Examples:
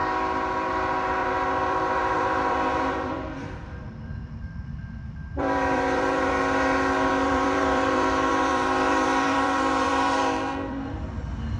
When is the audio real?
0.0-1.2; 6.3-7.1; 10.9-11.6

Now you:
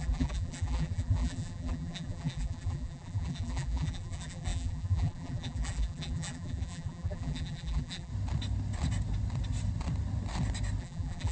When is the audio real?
8.1-10.8

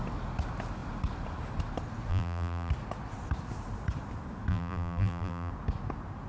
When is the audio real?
0.0-2.1; 2.7-4.5; 5.5-6.3

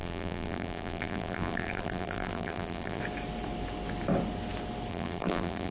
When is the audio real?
3.0-4.9

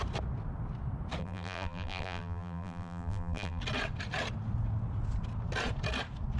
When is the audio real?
0.0-1.2; 3.6-6.4

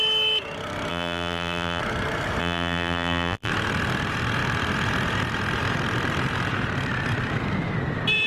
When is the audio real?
0.0-0.9; 1.8-2.4; 3.5-8.3

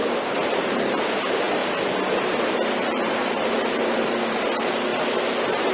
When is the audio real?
1.6-3.2; 4.9-5.7

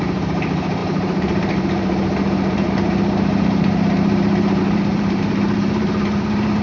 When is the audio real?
none